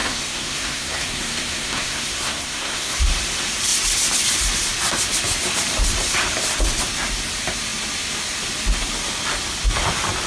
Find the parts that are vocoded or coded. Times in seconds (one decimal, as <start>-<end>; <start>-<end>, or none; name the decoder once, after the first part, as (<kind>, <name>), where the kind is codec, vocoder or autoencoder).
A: 0.0-3.0 (codec, SNAC)